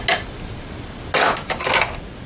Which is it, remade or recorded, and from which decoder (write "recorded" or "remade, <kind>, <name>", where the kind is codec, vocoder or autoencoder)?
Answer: recorded